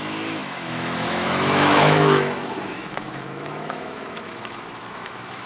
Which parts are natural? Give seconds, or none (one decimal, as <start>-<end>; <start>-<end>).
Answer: none